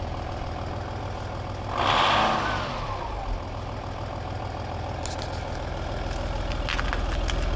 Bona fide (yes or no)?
yes